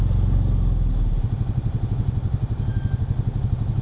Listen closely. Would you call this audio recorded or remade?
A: recorded